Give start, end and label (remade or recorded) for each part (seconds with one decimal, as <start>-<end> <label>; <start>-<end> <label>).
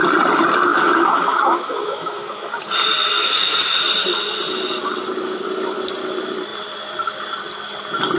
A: 0.0-0.7 recorded; 0.7-2.6 remade; 2.6-3.2 recorded; 3.2-3.8 remade; 3.8-8.2 recorded